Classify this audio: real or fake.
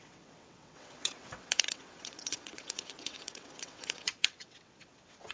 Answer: fake